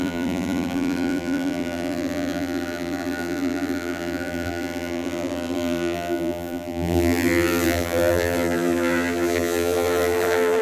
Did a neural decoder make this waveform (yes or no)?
yes